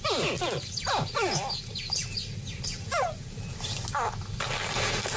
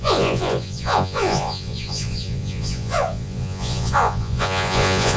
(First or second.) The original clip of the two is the first